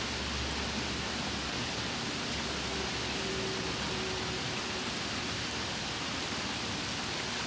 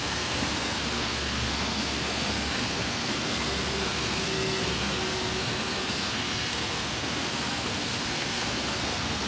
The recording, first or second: first